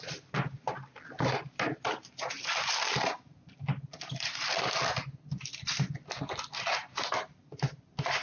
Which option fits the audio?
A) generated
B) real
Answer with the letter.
B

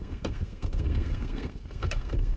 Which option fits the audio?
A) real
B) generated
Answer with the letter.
B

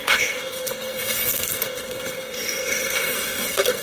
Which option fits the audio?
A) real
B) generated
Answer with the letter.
B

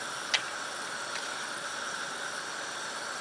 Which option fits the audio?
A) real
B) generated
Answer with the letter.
A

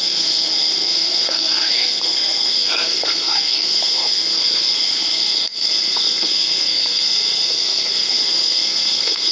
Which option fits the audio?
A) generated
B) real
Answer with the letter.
A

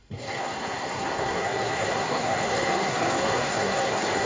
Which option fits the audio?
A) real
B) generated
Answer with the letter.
B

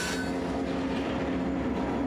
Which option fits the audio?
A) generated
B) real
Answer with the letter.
B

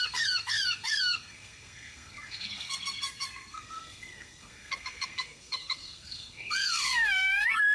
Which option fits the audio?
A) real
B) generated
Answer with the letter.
B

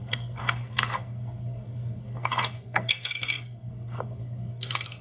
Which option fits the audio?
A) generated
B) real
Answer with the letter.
A